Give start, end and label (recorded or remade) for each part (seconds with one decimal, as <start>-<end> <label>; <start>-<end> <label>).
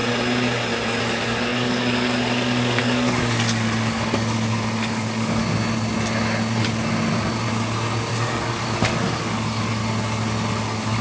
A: 0.0-1.0 recorded; 1.0-5.4 remade; 5.4-8.1 recorded; 8.1-9.8 remade; 9.8-10.6 recorded; 10.6-11.0 remade